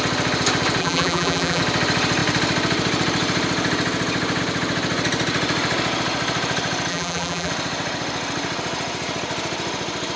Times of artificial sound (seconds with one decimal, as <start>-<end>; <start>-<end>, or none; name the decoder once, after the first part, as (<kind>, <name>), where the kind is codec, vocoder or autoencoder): 0.8-1.6 (vocoder, BigVGAN v2); 6.9-7.5